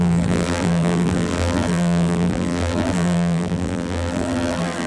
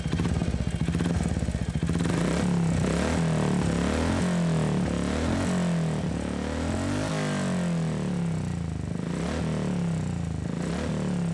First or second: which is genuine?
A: second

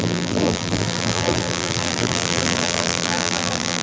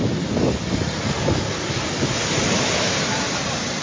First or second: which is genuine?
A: second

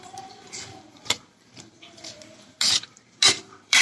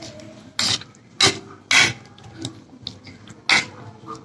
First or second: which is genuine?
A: second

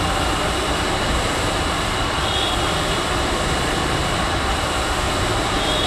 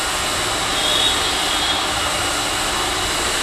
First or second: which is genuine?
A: second